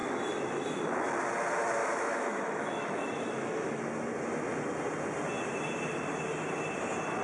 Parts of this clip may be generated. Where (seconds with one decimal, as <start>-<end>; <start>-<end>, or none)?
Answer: 0.0-0.9; 1.8-3.8